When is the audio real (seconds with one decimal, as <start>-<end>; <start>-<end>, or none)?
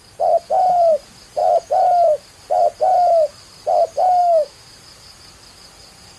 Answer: 0.0-4.2; 4.7-6.2